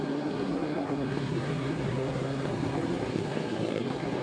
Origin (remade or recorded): remade